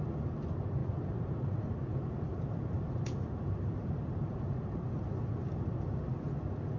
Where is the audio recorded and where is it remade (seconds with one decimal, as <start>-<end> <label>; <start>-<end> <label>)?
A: 0.0-0.8 recorded; 0.8-4.9 remade; 4.9-6.8 recorded